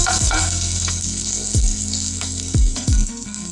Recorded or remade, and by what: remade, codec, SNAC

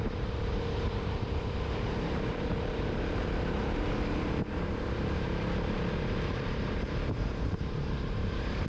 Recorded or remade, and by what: remade, vocoder, BigVGAN v2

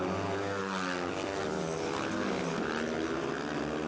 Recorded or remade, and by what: recorded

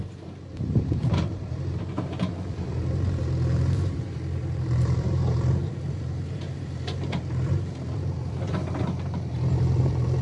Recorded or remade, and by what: remade, vocoder, BigVGAN v2